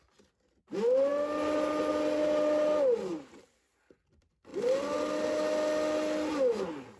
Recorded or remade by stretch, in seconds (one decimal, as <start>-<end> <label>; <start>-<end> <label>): 0.0-7.0 recorded